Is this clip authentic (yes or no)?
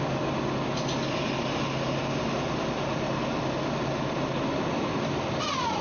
yes